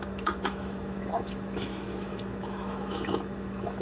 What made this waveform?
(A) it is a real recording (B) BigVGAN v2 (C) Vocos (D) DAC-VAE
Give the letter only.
D